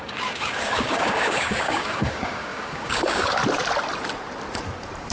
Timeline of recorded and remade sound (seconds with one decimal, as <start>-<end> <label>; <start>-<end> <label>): 0.0-3.4 remade; 3.4-5.1 recorded